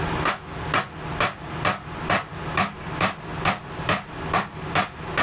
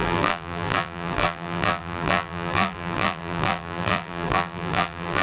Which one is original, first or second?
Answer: first